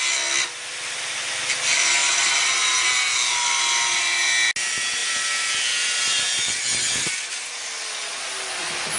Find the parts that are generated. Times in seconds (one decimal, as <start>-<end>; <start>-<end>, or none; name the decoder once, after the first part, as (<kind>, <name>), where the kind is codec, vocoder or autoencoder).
5.0-7.5 (vocoder, BigVGAN v2)